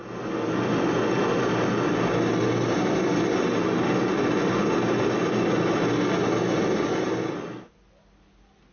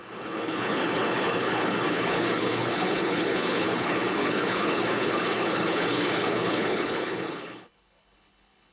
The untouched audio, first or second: first